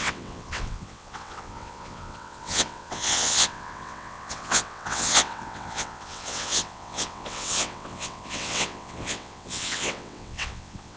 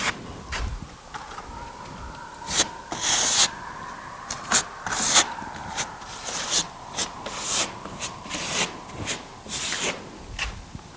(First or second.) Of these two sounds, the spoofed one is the first